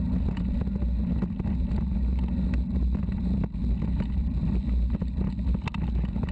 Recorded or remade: recorded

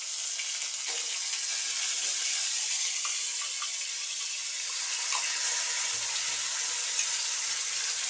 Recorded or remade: recorded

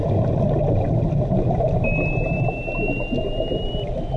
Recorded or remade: recorded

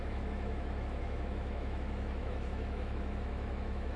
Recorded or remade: remade